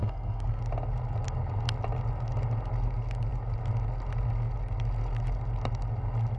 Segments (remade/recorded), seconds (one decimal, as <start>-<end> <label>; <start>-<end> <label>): 0.0-0.6 remade; 0.6-6.4 recorded